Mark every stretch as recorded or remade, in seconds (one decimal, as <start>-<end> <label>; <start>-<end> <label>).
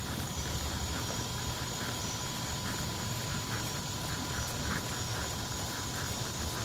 0.0-0.6 remade; 0.6-3.3 recorded; 3.3-4.1 remade; 4.1-6.6 recorded